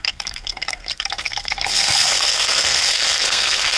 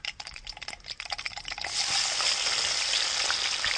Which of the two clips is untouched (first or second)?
second